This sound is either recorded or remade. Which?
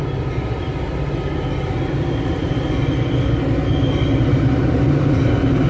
recorded